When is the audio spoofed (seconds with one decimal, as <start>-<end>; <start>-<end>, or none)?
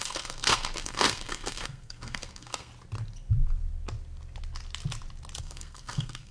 0.0-2.7; 5.4-6.3